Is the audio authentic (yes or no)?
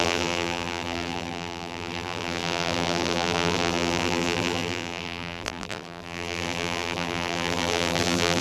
no